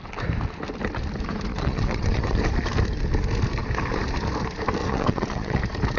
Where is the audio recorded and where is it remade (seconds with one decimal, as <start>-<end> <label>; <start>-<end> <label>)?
0.0-1.5 recorded; 1.5-2.4 remade; 2.4-4.8 recorded; 4.8-5.6 remade; 5.6-6.0 recorded